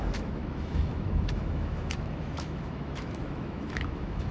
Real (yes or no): no